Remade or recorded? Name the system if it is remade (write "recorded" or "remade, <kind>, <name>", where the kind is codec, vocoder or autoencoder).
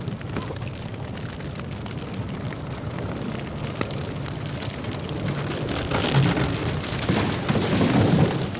recorded